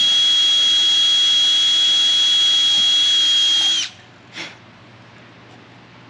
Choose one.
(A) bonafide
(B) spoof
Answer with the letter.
A